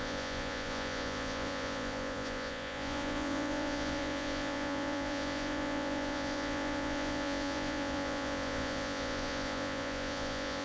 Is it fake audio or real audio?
fake